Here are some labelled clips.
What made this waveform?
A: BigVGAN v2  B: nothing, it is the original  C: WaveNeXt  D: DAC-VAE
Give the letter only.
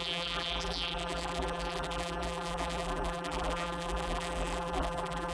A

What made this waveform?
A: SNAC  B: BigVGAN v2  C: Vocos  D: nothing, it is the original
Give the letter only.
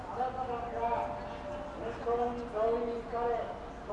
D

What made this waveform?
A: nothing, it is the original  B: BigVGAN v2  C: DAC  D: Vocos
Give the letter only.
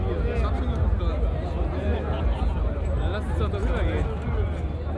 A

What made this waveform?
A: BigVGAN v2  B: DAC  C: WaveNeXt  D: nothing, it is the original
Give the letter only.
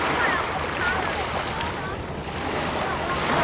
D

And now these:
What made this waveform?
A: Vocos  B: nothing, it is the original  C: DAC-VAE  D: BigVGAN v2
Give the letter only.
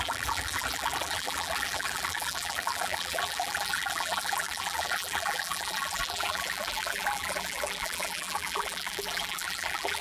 D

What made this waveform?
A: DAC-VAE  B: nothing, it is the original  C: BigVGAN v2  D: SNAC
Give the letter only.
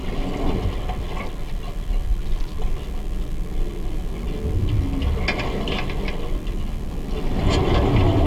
B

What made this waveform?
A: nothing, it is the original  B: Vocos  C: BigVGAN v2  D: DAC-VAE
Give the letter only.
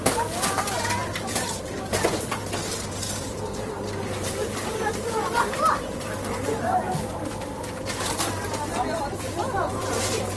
C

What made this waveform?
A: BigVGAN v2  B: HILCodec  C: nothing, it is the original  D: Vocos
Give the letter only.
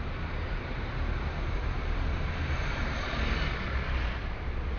A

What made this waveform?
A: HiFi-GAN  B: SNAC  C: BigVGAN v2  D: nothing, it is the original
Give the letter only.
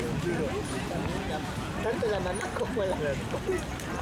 D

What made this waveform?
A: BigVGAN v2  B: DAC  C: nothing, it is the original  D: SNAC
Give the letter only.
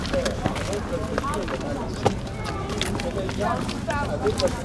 C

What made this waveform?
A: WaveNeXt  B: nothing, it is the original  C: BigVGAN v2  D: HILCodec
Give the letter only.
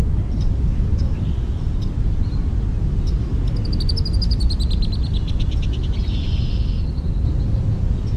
B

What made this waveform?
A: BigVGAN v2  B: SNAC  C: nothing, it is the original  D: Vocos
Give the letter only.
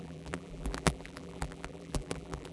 A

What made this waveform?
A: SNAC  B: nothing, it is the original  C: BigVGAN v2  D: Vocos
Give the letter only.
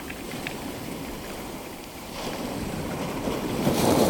C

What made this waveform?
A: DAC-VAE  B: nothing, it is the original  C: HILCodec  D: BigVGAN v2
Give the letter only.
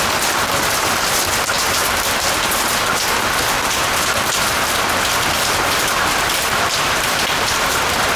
D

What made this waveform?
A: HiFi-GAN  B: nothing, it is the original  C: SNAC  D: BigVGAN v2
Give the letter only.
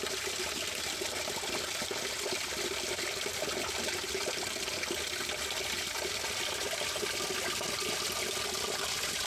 B